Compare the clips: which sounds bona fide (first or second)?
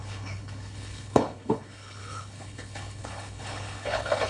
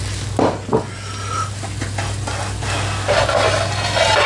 second